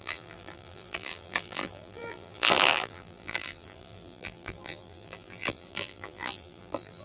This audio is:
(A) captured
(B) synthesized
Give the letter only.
B